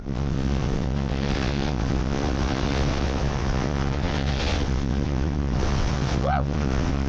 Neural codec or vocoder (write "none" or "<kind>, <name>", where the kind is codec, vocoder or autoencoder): vocoder, WaveNeXt